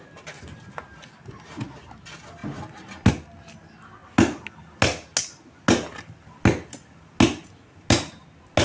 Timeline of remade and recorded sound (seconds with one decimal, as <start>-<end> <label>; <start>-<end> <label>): 0.0-8.6 recorded